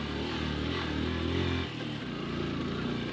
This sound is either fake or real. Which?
real